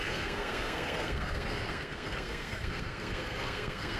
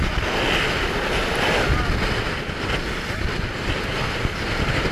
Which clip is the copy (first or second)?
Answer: first